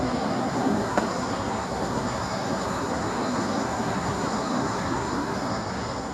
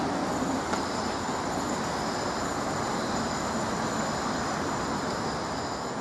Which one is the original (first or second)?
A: second